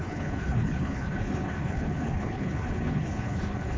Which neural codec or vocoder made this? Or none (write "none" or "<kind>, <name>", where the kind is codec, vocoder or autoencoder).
codec, HILCodec